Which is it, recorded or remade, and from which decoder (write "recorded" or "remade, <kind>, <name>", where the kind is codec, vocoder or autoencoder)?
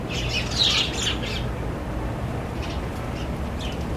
recorded